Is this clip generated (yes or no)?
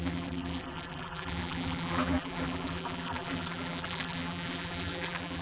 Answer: yes